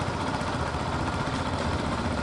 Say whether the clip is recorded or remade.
remade